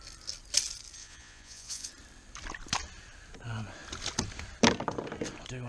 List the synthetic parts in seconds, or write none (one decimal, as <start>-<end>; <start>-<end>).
1.0-1.9